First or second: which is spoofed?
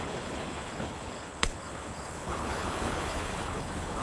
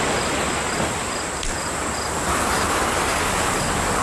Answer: first